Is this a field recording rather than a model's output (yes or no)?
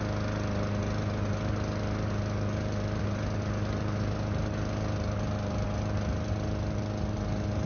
yes